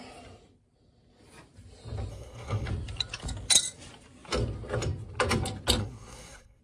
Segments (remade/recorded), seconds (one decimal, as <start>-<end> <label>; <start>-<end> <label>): 0.0-2.1 recorded; 2.1-2.7 remade; 2.7-5.8 recorded; 5.8-6.6 remade